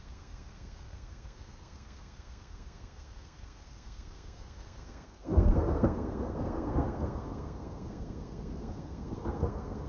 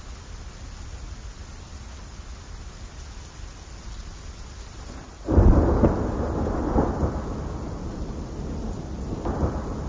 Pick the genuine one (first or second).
second